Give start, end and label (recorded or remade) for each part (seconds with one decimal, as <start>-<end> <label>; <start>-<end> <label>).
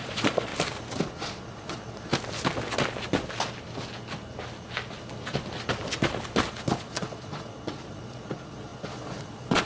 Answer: 0.0-0.5 remade; 0.5-1.1 recorded; 1.1-2.1 remade; 2.1-6.6 recorded; 6.6-9.6 remade